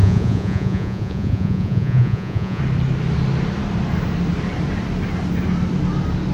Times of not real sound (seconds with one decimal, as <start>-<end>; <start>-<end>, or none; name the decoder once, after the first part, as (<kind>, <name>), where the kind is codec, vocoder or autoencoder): 0.0-2.6 (vocoder, Vocos)